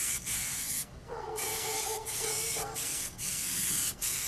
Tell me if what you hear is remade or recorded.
remade